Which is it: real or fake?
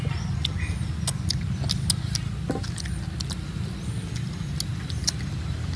real